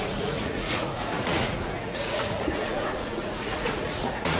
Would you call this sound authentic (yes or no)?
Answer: no